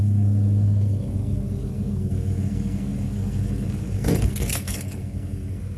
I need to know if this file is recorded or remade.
remade